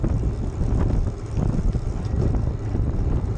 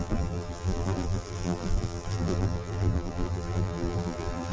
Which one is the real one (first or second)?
first